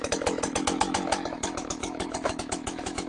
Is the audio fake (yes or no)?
yes